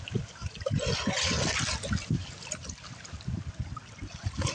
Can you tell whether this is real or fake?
real